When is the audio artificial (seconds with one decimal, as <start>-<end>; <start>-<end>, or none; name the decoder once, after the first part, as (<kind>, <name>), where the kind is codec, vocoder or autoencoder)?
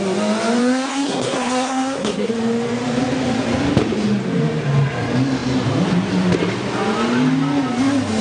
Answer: 0.6-2.3 (codec, SNAC)